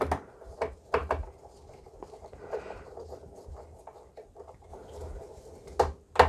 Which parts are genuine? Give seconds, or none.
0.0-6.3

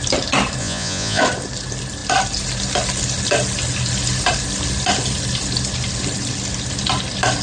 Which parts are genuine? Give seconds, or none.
0.0-0.6; 1.2-7.4

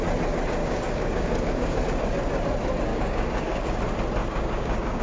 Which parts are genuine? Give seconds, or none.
0.0-0.6; 1.8-2.9; 3.8-4.2

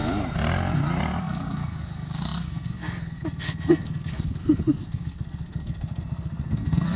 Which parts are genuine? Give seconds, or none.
0.0-1.2

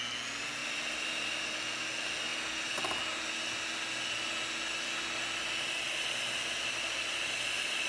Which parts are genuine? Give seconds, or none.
0.0-0.6; 1.4-7.9

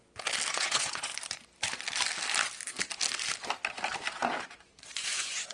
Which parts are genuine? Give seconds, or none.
0.0-0.5; 1.1-4.4

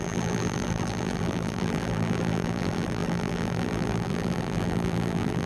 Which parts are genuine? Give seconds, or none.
none

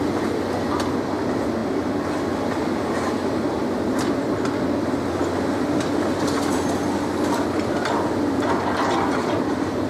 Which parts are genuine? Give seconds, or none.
0.0-9.9